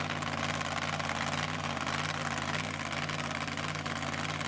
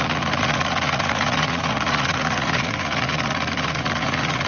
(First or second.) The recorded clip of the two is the first